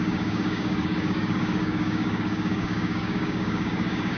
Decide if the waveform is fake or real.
fake